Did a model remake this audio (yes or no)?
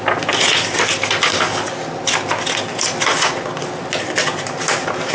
no